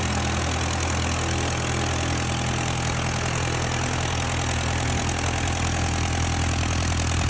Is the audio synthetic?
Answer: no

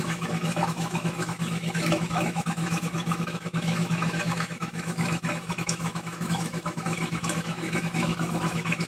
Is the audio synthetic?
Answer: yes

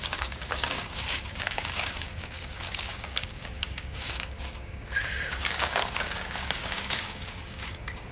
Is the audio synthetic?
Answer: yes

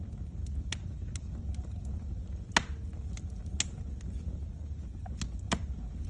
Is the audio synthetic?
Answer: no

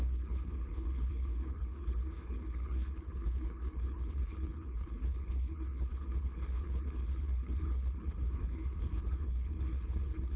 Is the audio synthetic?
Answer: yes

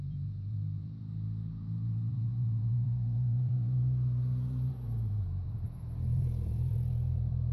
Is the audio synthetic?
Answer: yes